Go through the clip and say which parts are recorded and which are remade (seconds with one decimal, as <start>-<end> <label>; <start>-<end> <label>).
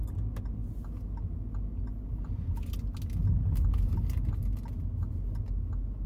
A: 0.0-6.1 recorded